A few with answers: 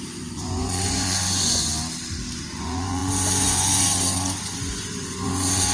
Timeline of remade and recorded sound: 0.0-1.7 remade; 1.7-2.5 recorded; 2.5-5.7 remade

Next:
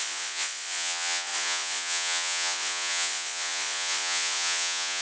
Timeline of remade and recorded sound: 0.0-5.0 remade

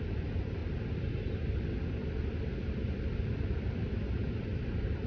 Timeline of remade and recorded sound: 0.0-0.6 remade; 0.6-3.7 recorded; 3.7-5.1 remade

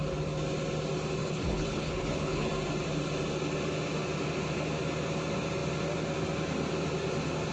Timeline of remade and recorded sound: 0.0-1.2 recorded; 1.2-2.5 remade; 2.5-7.5 recorded